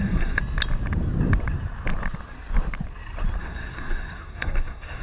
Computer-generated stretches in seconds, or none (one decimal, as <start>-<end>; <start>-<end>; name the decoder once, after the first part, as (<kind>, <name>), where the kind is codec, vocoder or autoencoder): 0.0-0.4 (codec, SNAC); 3.4-5.0